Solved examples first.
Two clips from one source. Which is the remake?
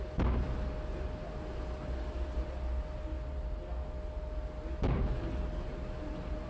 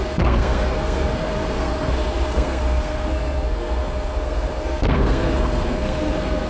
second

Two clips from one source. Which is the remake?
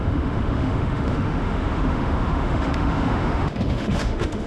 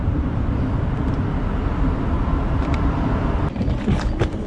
first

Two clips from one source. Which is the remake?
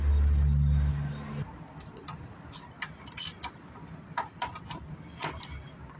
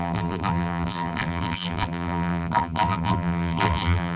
second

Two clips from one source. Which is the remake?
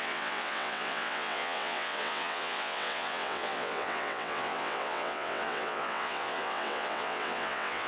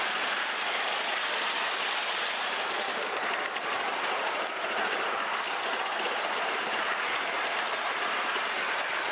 first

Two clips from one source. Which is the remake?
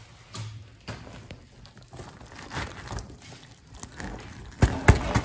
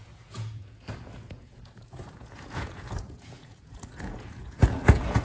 second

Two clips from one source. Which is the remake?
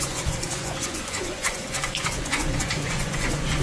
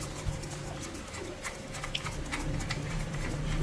first